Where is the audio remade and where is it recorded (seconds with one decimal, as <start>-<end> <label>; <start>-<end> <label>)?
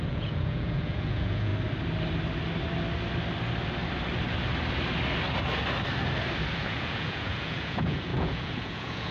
0.0-1.5 remade; 1.5-6.6 recorded; 6.6-9.1 remade